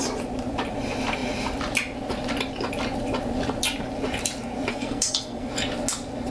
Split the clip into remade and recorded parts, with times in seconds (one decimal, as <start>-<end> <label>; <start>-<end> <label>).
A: 0.0-4.7 recorded; 4.7-5.5 remade; 5.5-6.3 recorded